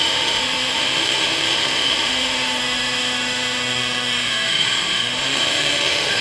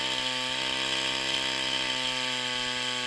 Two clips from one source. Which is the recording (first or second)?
second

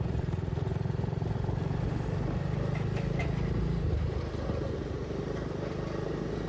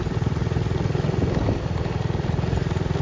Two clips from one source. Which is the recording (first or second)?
second